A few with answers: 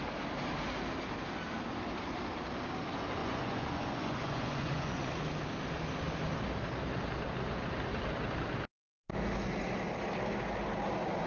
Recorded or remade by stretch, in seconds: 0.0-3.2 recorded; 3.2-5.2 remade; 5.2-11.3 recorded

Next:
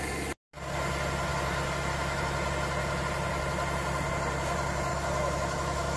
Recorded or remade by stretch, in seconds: 0.0-4.9 recorded; 4.9-6.0 remade

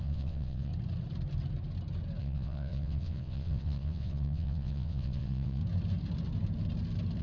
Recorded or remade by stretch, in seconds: 0.0-0.7 remade; 0.7-2.2 recorded; 2.2-5.6 remade; 5.6-7.2 recorded

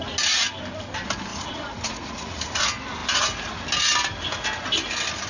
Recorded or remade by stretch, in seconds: 0.0-1.3 recorded; 1.3-2.6 remade; 2.6-5.3 recorded

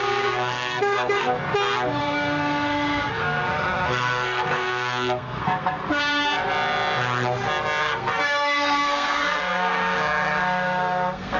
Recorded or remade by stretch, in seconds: 0.0-1.3 remade; 1.3-2.0 recorded; 2.0-5.8 remade; 5.8-7.8 recorded; 7.8-11.4 remade

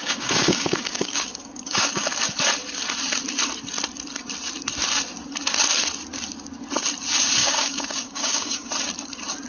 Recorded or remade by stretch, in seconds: 0.0-2.0 remade; 2.0-7.4 recorded; 7.4-8.7 remade; 8.7-9.5 recorded

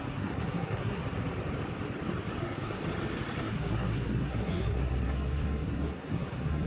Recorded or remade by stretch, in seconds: 0.0-1.0 remade; 1.0-2.4 recorded; 2.4-2.8 remade; 2.8-3.4 recorded; 3.4-6.7 remade